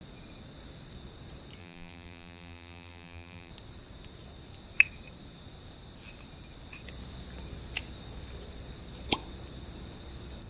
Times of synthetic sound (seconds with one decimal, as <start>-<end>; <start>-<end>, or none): 1.6-3.5